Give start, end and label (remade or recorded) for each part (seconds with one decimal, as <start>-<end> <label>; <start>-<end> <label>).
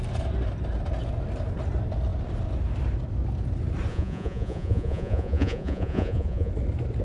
0.0-3.9 recorded; 3.9-6.5 remade; 6.5-7.0 recorded